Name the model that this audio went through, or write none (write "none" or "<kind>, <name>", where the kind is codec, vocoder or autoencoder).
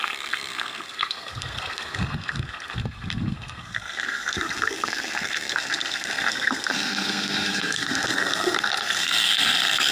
codec, SNAC